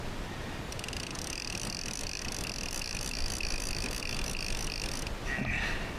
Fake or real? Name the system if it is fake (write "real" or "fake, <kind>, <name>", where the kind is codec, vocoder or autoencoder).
real